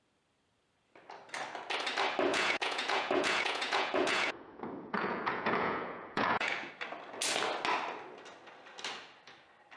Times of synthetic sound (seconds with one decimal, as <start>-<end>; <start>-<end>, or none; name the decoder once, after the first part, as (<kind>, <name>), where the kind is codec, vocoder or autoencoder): 2.3-6.7 (vocoder, Vocos)